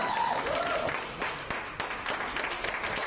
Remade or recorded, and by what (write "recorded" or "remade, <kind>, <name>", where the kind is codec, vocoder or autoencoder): recorded